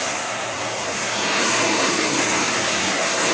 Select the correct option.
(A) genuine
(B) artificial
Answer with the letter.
B